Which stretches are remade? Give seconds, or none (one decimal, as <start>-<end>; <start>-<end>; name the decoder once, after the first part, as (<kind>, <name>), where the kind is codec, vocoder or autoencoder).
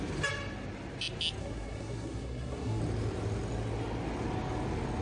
1.4-2.8 (codec, SNAC)